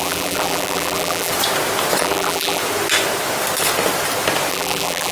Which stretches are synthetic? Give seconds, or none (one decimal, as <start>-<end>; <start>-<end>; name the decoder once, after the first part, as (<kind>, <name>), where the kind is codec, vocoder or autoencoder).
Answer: 0.0-1.3 (vocoder, BigVGAN v2); 2.0-2.6; 4.5-5.1